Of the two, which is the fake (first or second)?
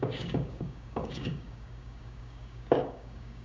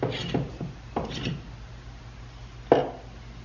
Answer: first